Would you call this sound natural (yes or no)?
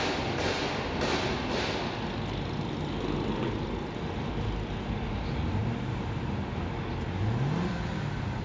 yes